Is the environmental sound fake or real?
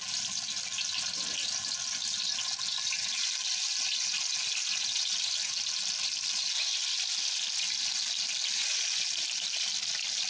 real